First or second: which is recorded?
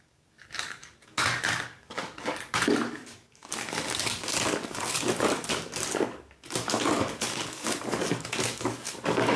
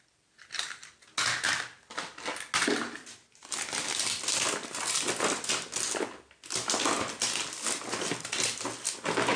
second